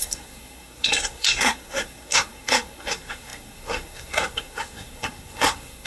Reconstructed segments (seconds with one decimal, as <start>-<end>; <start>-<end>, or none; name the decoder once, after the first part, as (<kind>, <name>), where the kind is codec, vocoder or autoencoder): 0.0-5.9 (codec, SNAC)